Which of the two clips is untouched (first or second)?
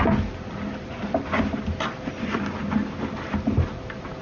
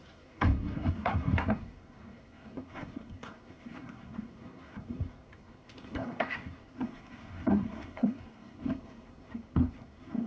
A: first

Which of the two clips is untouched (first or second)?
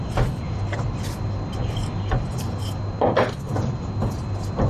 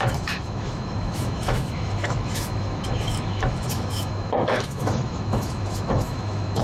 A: first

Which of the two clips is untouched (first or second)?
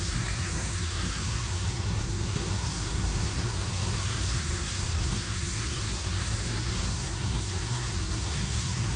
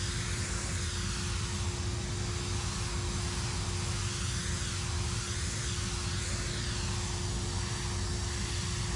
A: second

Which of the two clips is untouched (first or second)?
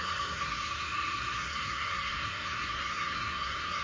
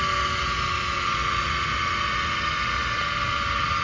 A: second